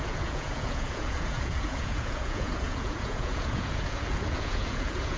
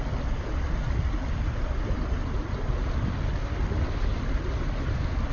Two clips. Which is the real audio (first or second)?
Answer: second